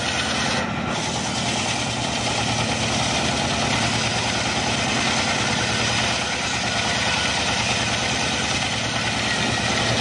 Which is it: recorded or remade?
recorded